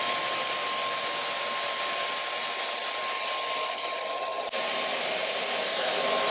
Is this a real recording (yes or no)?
yes